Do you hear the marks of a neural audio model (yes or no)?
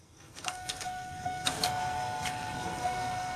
yes